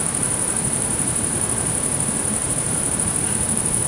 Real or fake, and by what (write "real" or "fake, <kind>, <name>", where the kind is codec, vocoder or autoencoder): fake, vocoder, BigVGAN v2